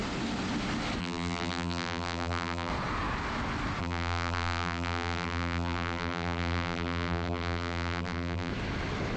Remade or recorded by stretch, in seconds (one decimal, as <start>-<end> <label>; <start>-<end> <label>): 0.0-1.0 recorded; 1.0-2.7 remade; 2.7-3.8 recorded; 3.8-8.5 remade; 8.5-9.2 recorded